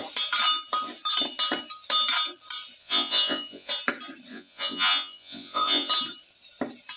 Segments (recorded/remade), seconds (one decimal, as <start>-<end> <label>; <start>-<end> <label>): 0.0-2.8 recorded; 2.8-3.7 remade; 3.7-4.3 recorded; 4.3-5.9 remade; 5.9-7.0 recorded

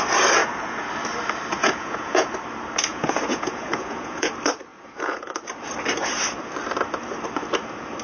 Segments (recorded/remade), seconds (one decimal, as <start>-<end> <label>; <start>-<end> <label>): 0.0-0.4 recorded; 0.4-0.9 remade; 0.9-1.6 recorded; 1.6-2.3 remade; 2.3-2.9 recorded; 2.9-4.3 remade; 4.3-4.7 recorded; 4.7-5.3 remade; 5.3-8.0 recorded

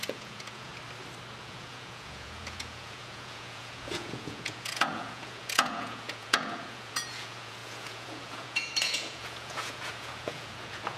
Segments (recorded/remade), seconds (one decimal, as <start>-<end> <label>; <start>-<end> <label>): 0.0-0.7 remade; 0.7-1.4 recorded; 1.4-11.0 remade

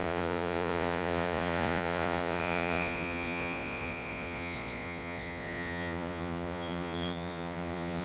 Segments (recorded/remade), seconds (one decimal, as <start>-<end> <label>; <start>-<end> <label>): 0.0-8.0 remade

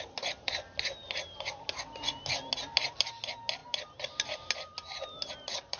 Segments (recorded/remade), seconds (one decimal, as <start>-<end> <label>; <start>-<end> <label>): 0.0-5.8 recorded

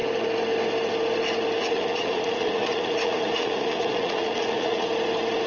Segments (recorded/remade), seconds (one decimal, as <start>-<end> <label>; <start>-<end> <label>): 0.0-1.6 recorded; 1.6-4.9 remade; 4.9-5.5 recorded

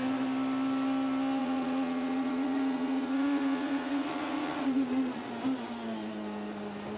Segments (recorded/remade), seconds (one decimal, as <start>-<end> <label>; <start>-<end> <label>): 0.0-1.4 recorded; 1.4-5.3 remade; 5.3-7.0 recorded